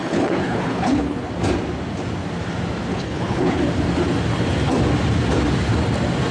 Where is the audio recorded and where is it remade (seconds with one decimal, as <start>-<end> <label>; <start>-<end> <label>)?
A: 0.0-1.3 remade; 1.3-2.9 recorded; 2.9-3.6 remade; 3.6-6.3 recorded